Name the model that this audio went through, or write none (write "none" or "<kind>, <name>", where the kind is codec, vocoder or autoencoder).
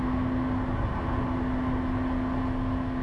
none